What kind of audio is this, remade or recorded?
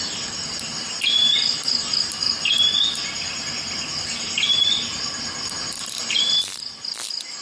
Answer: recorded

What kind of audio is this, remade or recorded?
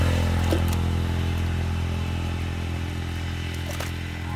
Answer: recorded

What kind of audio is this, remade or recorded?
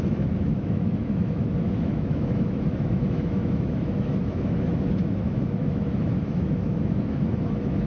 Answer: remade